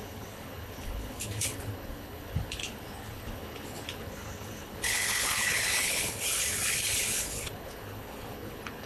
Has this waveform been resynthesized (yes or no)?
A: yes